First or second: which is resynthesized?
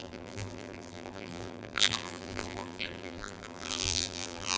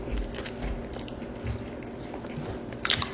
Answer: first